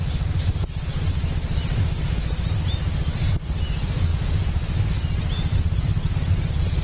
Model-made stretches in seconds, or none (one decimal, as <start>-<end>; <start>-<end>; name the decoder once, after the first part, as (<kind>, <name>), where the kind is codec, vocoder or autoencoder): none